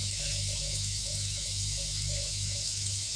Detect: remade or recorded remade